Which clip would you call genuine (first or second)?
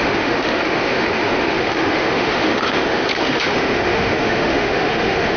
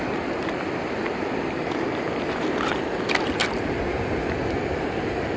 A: second